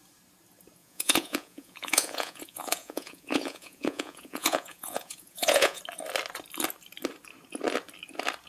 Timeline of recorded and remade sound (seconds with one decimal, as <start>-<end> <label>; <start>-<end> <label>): 0.0-0.8 recorded; 0.8-5.8 remade; 5.8-8.5 recorded